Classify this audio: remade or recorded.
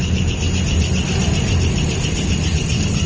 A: recorded